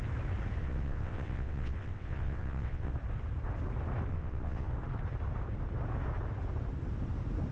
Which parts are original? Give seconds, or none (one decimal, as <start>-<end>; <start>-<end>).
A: 0.0-0.6; 2.9-4.1; 4.7-7.5